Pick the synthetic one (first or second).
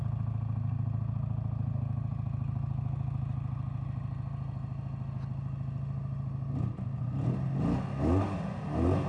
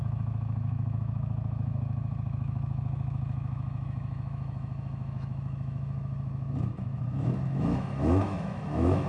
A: second